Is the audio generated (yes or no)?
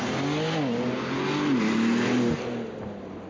no